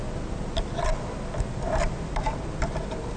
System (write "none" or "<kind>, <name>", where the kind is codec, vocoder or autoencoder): none